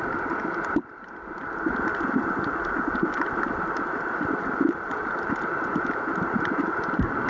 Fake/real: real